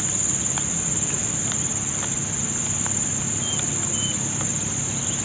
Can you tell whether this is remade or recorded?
recorded